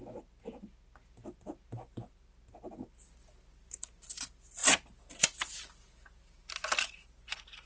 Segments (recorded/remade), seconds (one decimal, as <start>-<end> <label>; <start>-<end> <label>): 0.0-7.7 recorded